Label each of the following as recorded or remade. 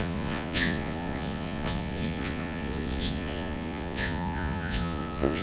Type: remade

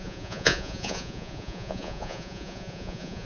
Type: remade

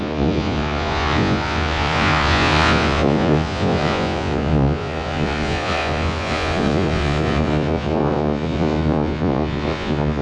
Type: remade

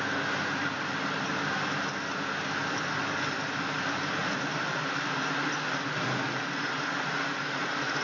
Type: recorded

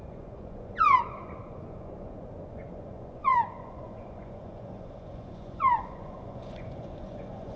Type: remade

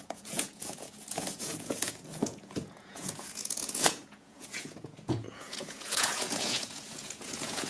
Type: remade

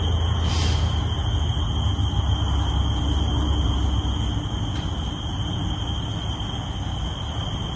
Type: recorded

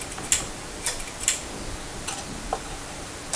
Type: recorded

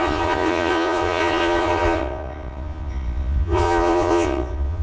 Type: remade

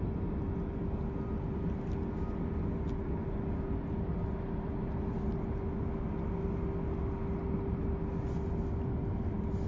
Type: recorded